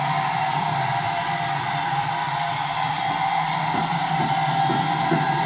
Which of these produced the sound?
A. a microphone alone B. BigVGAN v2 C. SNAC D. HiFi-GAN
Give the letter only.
B